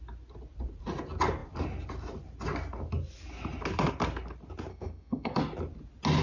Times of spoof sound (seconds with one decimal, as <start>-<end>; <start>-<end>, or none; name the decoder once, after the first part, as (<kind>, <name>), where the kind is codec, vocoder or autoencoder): 4.7-5.4 (codec, SNAC)